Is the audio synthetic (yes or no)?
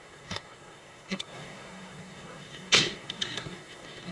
yes